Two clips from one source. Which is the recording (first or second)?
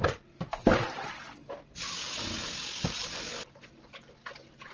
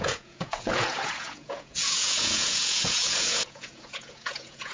first